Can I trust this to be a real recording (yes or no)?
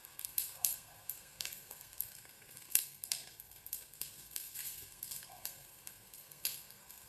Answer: no